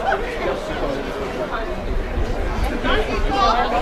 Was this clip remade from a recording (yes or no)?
no